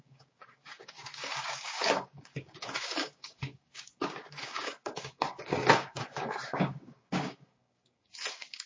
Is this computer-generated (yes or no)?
yes